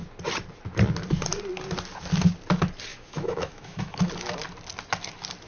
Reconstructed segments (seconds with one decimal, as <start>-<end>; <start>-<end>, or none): 2.9-4.1